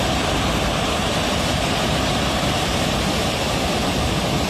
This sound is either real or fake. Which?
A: fake